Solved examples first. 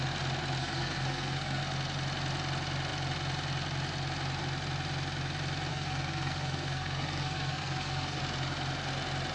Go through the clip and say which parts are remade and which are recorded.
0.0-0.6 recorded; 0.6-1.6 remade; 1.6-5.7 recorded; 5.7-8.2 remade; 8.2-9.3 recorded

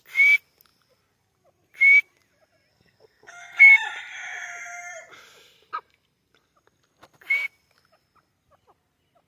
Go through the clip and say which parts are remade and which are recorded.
0.0-2.7 recorded; 2.7-3.7 remade; 3.7-9.3 recorded

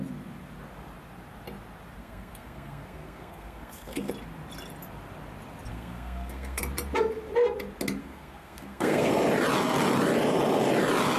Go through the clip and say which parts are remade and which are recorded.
0.0-2.0 recorded; 2.0-4.1 remade; 4.1-5.7 recorded; 5.7-6.6 remade; 6.6-8.0 recorded; 8.0-9.1 remade; 9.1-11.2 recorded

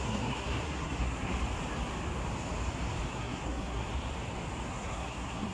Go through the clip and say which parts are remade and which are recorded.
0.0-1.3 remade; 1.3-3.1 recorded; 3.1-3.9 remade; 3.9-4.7 recorded; 4.7-5.5 remade

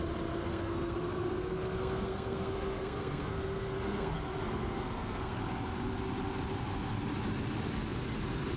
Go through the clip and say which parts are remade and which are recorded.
0.0-0.4 recorded; 0.4-5.4 remade; 5.4-8.6 recorded

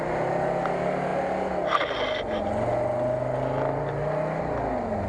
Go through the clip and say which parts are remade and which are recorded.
0.0-5.1 recorded